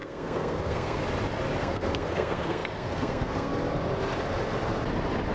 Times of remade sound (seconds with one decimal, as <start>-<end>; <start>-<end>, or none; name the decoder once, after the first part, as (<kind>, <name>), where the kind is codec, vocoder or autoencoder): 0.0-1.0 (codec, SNAC); 1.6-3.5